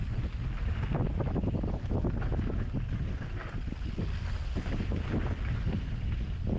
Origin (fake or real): real